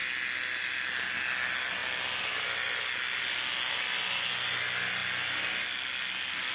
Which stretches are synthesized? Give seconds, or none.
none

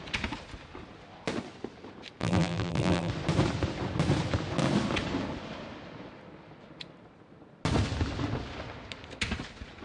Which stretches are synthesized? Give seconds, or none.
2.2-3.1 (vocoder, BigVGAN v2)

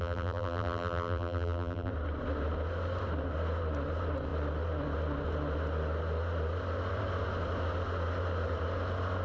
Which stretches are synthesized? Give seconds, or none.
0.0-1.9 (vocoder, BigVGAN v2)

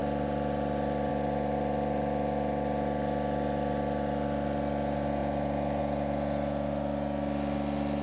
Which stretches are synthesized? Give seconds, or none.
0.0-1.1 (vocoder, BigVGAN v2); 5.2-5.8

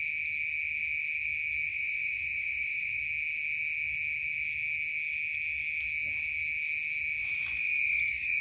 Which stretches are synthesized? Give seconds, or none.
1.7-3.0 (vocoder, BigVGAN v2); 7.2-8.4

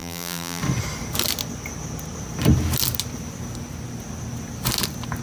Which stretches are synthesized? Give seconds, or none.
0.0-0.6 (vocoder, BigVGAN v2)

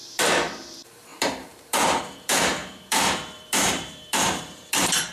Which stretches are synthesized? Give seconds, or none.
0.0-5.1 (vocoder, BigVGAN v2)

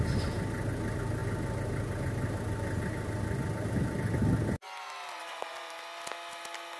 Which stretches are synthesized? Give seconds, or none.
none